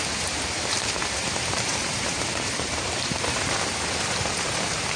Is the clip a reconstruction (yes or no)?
yes